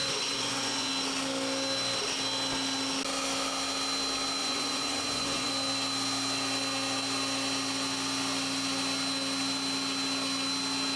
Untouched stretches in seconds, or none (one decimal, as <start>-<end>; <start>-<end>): 0.9-4.4; 5.5-11.0